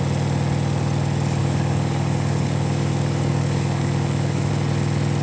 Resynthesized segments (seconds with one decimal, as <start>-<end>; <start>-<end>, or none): 1.4-4.5